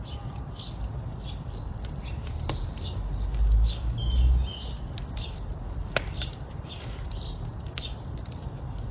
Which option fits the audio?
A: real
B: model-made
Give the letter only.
A